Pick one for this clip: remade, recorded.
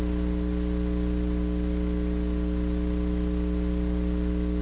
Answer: recorded